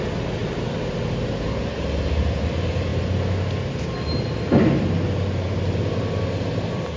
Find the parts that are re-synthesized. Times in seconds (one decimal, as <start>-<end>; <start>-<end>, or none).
0.4-0.9